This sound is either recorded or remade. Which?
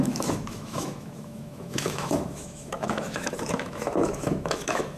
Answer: remade